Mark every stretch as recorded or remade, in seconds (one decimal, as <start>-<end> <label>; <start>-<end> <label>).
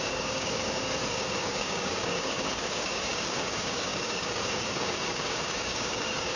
0.0-6.4 remade